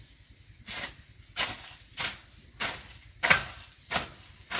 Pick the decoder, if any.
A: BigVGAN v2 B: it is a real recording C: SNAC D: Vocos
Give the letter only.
B